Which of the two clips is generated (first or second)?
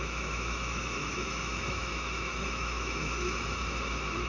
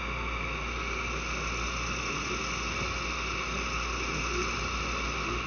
first